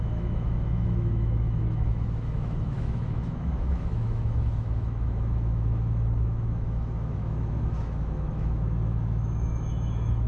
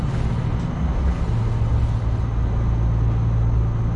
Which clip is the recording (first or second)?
second